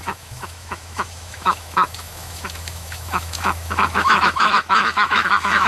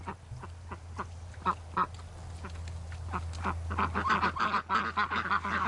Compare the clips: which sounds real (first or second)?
second